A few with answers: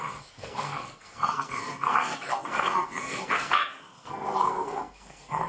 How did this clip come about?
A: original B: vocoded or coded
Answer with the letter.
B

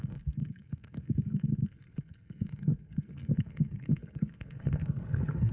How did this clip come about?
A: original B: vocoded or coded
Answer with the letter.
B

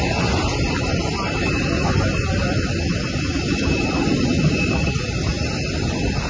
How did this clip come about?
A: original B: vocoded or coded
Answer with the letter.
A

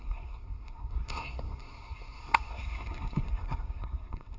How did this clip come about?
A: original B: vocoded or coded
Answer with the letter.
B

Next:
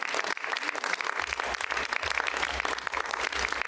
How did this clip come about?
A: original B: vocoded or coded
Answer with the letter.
A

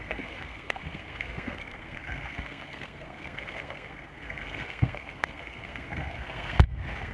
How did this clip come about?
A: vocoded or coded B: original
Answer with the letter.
A